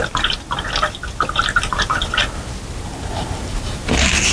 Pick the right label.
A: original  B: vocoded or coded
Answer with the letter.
A